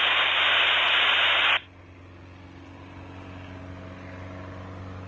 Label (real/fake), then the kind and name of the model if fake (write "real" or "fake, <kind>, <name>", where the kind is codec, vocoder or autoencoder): real